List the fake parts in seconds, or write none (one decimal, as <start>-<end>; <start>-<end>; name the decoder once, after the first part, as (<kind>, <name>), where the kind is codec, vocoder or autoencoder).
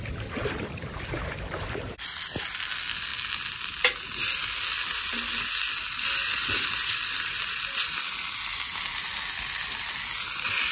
0.4-2.3 (vocoder, BigVGAN v2); 6.2-7.3; 8.5-9.9